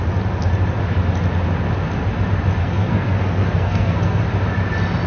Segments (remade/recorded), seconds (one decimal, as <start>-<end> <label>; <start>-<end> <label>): 0.0-2.6 recorded; 2.6-4.2 remade; 4.2-5.1 recorded